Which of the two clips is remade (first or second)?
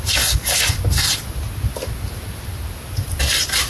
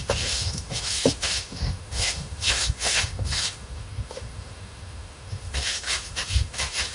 second